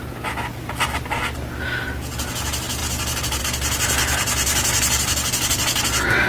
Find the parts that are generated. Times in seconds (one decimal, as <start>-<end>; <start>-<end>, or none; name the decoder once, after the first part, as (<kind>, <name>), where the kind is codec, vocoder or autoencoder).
none